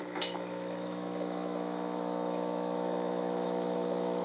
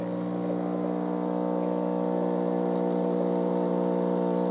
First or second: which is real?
second